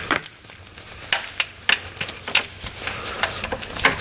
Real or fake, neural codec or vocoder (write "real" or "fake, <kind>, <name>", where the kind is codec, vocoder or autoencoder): real